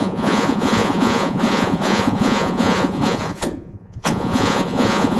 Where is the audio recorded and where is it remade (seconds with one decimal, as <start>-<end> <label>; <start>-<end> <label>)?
0.0-5.2 remade